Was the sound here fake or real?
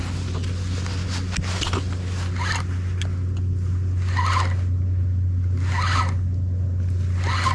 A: real